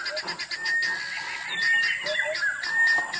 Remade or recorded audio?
recorded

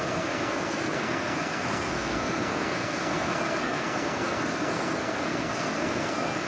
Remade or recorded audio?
remade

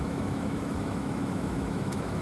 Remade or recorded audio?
remade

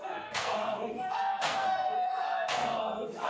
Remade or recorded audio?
remade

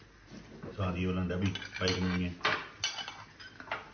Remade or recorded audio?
recorded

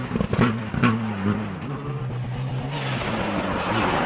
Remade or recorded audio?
recorded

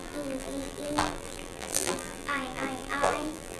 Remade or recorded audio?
remade